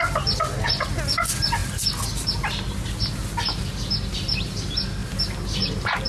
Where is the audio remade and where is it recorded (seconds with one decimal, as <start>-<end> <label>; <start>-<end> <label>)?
0.0-6.1 recorded

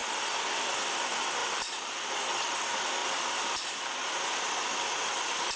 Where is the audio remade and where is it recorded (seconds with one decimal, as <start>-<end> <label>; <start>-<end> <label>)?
0.0-1.4 recorded; 1.4-1.9 remade; 1.9-3.0 recorded; 3.0-5.6 remade

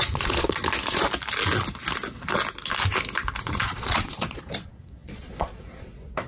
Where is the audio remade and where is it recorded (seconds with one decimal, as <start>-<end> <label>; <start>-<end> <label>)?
0.0-0.6 remade; 0.6-3.4 recorded; 3.4-6.3 remade

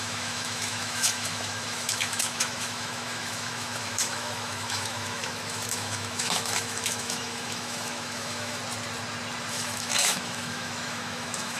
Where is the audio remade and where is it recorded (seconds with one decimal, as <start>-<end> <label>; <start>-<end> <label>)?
0.0-8.6 remade; 8.6-9.5 recorded; 9.5-11.6 remade

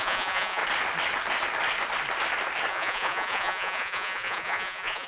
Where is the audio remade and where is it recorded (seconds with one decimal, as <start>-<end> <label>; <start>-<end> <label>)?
0.0-0.6 remade; 0.6-2.7 recorded; 2.7-5.1 remade

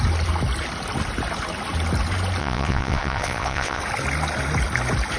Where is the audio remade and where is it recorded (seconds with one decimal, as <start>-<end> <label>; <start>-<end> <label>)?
0.0-2.4 recorded; 2.4-3.8 remade; 3.8-5.2 recorded

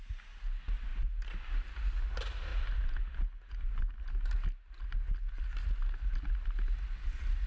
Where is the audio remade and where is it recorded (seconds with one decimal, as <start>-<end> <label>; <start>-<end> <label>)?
0.0-7.5 recorded